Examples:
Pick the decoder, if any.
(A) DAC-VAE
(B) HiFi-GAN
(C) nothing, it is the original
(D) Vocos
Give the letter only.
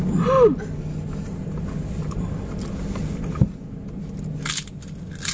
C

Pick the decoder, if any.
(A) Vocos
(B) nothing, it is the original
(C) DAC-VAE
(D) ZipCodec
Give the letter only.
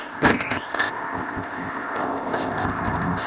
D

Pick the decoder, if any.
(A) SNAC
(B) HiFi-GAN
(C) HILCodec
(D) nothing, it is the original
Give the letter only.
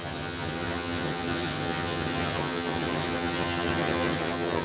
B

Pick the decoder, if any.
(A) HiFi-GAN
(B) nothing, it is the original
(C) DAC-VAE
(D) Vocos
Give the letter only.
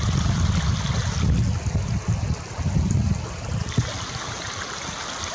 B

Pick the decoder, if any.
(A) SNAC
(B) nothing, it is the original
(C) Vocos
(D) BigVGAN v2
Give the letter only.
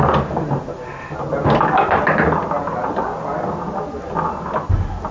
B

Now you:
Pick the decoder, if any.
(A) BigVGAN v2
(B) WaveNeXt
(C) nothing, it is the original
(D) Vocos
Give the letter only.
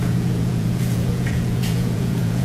D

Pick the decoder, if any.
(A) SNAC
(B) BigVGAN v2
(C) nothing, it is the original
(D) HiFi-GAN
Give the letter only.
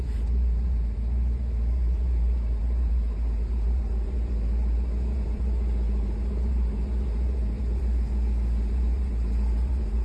B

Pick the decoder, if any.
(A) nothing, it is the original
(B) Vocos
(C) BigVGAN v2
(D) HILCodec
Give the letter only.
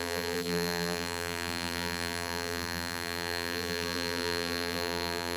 C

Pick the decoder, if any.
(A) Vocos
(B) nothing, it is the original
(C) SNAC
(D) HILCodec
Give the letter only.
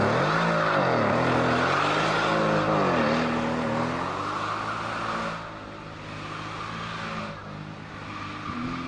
B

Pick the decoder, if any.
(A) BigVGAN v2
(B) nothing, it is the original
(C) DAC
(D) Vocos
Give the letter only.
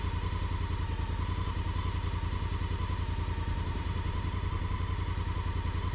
B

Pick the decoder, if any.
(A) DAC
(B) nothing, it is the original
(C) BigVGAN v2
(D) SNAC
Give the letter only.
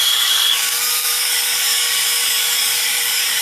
A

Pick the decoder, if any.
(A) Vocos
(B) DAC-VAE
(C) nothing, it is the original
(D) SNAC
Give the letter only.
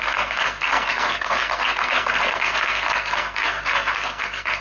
D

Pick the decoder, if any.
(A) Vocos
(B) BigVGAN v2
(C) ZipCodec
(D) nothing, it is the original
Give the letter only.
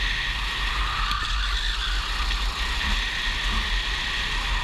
D